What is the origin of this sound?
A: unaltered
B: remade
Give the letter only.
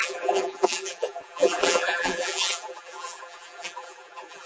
B